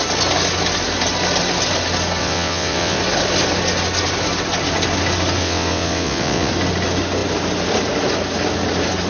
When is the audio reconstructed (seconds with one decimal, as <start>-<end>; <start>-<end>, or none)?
2.2-3.0; 5.4-6.5